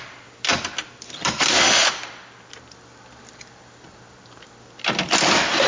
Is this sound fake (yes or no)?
no